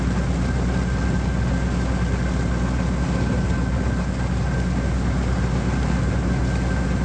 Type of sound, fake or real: real